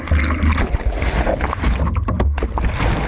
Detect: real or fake real